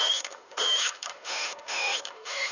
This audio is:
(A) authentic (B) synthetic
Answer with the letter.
B